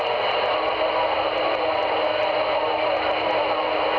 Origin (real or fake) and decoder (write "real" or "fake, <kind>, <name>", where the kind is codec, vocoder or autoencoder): real